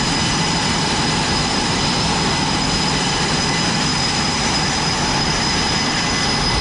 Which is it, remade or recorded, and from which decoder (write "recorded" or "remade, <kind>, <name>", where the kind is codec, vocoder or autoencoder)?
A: recorded